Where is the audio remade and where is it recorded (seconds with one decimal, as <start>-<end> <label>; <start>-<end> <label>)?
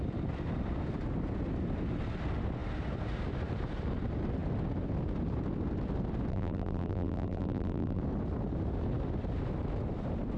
0.0-6.3 recorded; 6.3-8.0 remade; 8.0-10.4 recorded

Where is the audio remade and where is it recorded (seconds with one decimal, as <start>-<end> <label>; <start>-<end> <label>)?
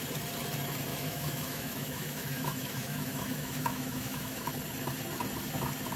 0.0-0.9 recorded; 0.9-4.5 remade; 4.5-6.0 recorded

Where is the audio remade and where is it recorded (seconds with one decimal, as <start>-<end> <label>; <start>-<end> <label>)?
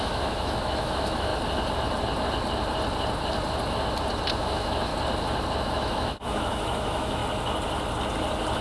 0.0-1.3 remade; 1.3-4.3 recorded; 4.3-4.9 remade; 4.9-5.6 recorded; 5.6-7.2 remade; 7.2-8.6 recorded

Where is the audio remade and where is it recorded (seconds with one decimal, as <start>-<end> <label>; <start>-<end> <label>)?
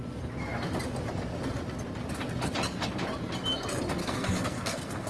0.0-4.0 recorded; 4.0-5.1 remade